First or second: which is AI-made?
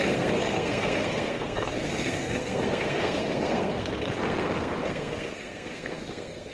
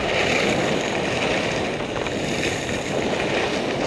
first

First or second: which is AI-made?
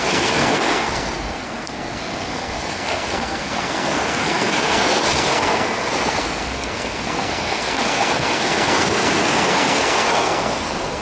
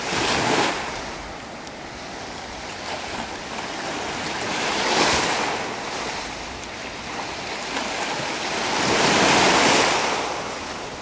first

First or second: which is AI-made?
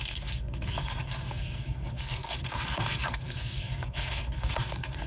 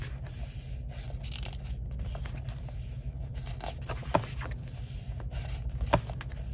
first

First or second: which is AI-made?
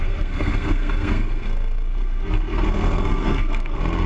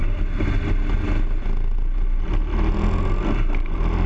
first